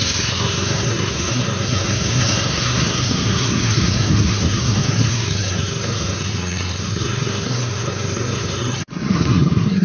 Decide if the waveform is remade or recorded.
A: remade